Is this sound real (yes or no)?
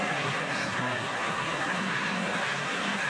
no